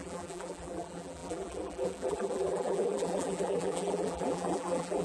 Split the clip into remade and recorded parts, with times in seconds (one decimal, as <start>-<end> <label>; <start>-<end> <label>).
0.0-5.0 remade